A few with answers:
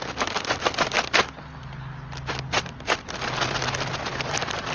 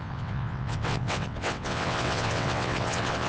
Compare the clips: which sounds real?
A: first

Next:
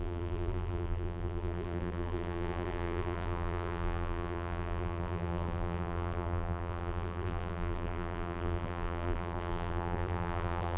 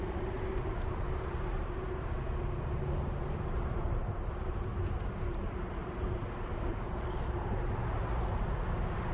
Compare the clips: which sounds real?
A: second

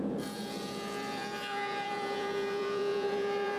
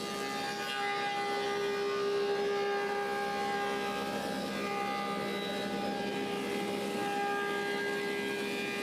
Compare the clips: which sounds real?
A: second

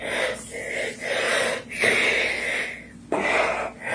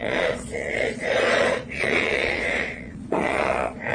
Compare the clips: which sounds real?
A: first